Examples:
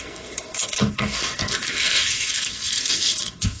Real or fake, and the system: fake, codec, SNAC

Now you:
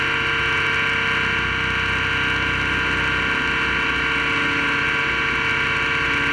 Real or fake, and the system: real